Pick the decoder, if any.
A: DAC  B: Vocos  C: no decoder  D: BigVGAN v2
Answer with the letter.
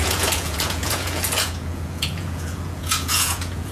B